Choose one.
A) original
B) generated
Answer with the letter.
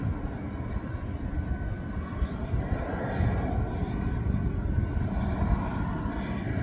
A